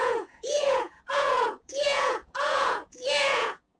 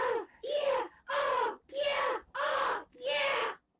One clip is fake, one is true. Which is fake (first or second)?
first